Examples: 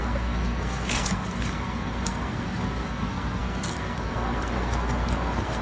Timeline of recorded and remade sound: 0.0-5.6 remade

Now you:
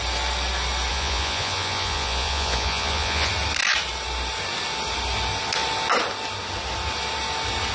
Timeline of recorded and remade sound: 0.0-0.9 recorded; 0.9-3.3 remade; 3.3-7.7 recorded

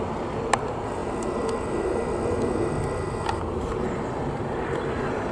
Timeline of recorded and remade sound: 0.0-5.3 recorded